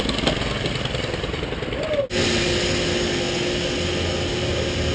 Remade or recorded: recorded